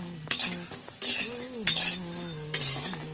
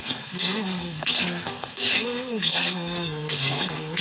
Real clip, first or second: first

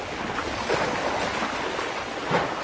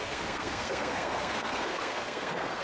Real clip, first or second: first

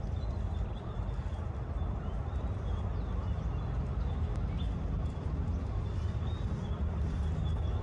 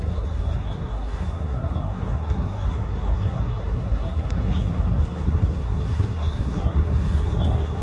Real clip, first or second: first